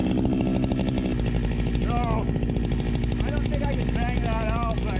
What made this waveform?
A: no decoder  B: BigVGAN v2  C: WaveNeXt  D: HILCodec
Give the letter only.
A